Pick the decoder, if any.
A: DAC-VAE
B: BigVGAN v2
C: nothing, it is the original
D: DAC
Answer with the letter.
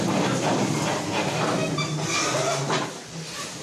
C